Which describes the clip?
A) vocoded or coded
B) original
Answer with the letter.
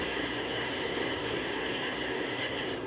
A